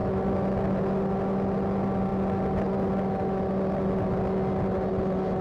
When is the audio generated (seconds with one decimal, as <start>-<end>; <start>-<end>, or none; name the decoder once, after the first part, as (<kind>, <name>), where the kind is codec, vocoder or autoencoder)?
none